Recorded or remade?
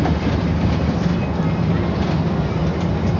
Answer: recorded